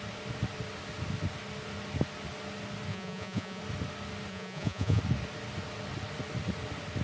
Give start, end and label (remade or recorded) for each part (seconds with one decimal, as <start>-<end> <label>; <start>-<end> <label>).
0.0-2.9 recorded; 2.9-3.6 remade; 3.6-4.3 recorded; 4.3-5.0 remade; 5.0-7.0 recorded